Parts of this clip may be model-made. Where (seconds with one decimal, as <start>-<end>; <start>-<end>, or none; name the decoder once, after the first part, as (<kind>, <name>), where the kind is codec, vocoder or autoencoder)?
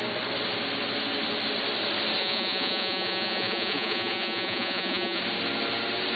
2.2-5.2 (vocoder, Vocos)